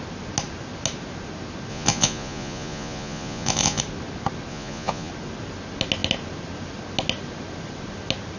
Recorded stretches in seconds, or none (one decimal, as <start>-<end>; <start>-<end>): 0.0-1.7; 3.8-4.5; 5.1-8.4